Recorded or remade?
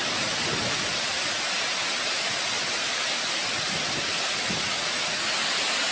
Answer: recorded